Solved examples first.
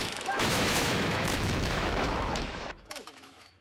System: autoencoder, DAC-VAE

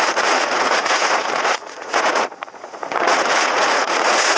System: vocoder, Vocos